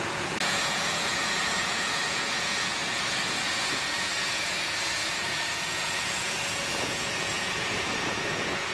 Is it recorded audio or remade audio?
remade